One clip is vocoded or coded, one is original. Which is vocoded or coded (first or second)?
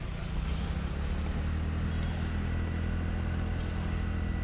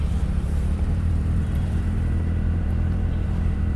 second